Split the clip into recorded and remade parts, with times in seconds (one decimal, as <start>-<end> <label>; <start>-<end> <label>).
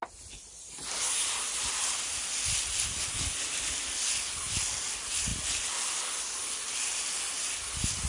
0.0-8.1 recorded